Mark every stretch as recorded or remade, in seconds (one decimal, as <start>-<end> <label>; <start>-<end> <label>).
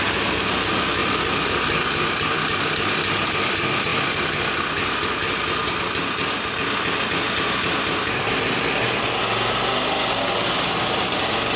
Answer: 0.0-11.6 recorded